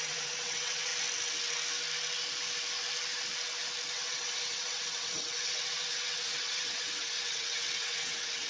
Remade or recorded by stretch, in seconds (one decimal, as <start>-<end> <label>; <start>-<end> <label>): 0.0-0.9 remade; 0.9-3.9 recorded; 3.9-8.5 remade